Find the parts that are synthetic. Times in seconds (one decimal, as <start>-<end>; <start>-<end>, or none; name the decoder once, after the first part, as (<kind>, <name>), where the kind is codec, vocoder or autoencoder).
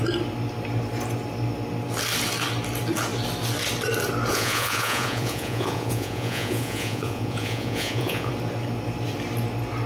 4.3-8.3 (vocoder, Vocos)